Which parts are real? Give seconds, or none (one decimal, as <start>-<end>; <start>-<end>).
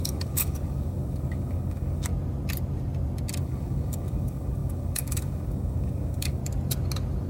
2.1-3.4; 6.4-7.3